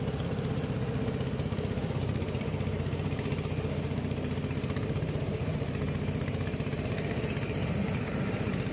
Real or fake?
fake